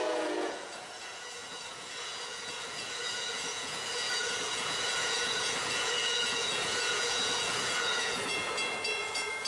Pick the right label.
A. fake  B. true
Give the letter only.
A